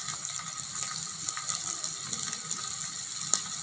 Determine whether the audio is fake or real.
real